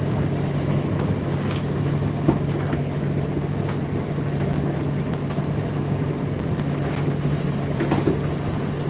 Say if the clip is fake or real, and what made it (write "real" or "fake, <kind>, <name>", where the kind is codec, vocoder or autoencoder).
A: real